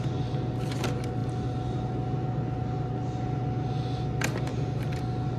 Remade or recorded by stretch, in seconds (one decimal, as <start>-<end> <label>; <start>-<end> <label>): 0.0-4.5 recorded; 4.5-5.0 remade; 5.0-5.4 recorded